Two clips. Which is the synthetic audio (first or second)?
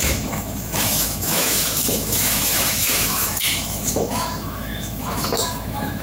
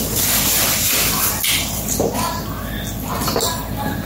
first